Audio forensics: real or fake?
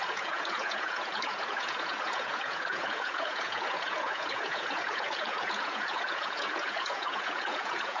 fake